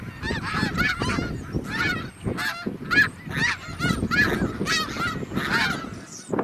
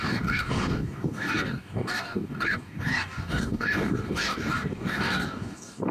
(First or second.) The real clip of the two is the first